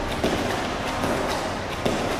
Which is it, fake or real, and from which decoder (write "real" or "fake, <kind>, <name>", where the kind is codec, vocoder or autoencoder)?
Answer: real